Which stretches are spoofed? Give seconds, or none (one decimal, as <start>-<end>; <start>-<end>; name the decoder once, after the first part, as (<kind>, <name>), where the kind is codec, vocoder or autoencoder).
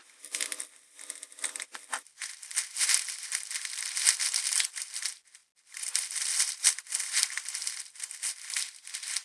none